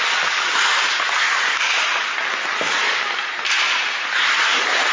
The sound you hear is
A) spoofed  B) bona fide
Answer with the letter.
B